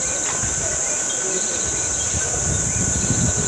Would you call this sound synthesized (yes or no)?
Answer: no